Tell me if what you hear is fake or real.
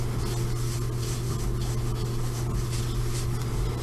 real